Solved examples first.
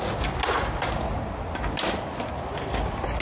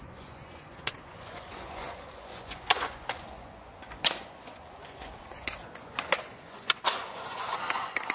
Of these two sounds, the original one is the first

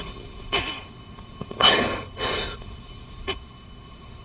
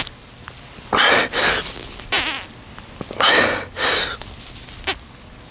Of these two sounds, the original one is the second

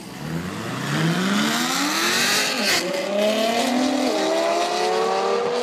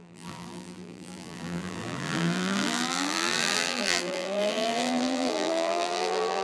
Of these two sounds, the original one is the first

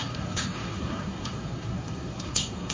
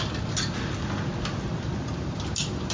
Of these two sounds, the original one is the second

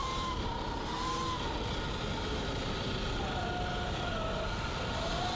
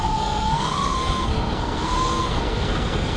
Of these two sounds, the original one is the first